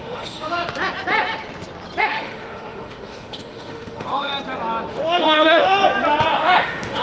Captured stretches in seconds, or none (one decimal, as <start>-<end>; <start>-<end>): 0.6-2.0; 4.3-4.9; 5.8-6.3